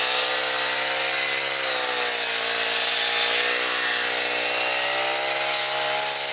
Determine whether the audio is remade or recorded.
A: recorded